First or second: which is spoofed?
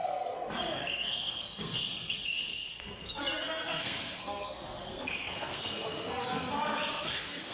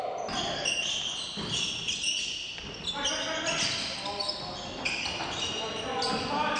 first